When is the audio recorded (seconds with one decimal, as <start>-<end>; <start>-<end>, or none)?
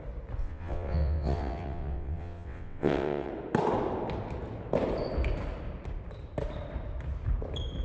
0.0-0.4; 3.3-7.8